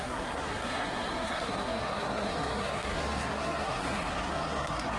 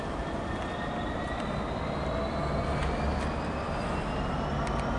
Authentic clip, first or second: second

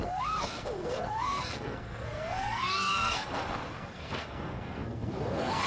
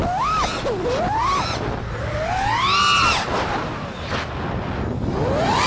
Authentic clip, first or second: second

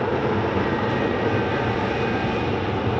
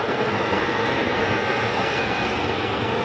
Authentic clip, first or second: first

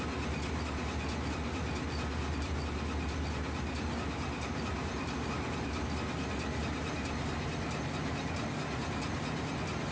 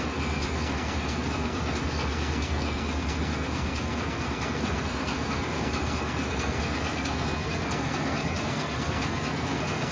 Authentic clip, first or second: first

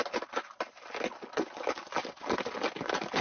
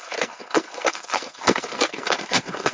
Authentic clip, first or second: first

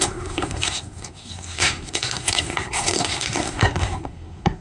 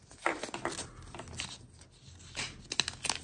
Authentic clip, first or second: second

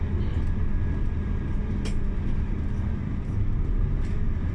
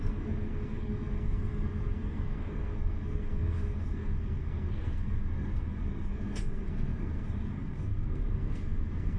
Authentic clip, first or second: first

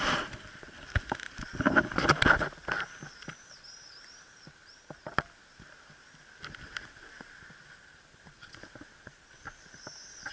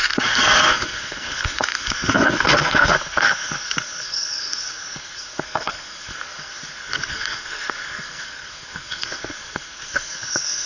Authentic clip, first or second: first